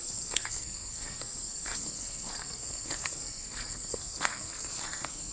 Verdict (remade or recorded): remade